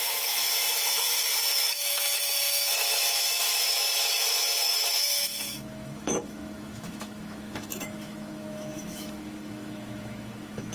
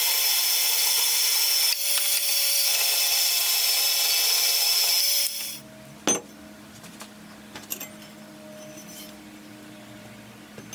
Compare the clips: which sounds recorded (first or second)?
second